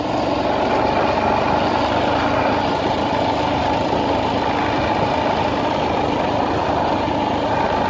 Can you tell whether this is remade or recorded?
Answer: recorded